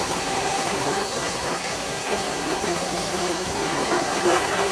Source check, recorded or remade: remade